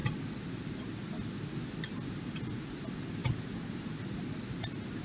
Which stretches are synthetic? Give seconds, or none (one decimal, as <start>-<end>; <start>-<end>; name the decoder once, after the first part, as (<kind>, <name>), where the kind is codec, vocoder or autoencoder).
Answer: 0.0-1.0 (vocoder, BigVGAN v2); 1.9-2.6; 3.2-3.9